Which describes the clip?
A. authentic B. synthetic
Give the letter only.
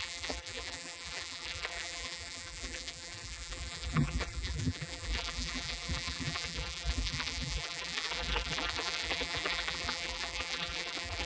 B